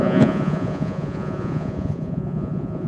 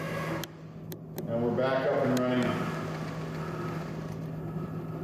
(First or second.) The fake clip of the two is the first